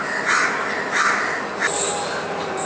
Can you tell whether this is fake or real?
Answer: real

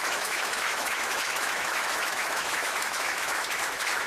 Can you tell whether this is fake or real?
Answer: fake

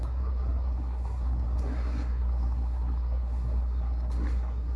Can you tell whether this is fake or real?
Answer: fake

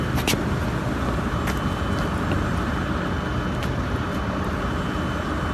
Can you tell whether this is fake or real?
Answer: real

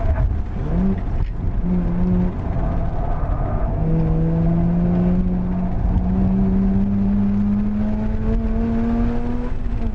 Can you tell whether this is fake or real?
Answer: real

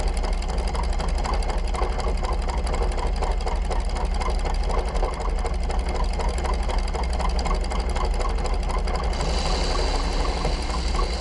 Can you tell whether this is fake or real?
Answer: real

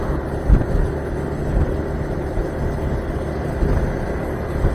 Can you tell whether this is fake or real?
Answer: real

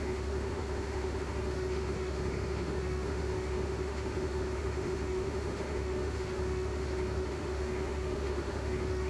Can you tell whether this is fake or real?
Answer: fake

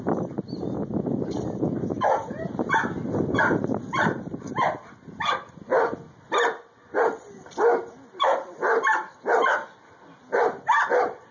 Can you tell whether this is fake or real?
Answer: real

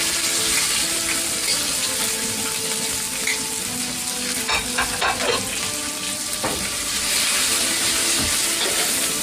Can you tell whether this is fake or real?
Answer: real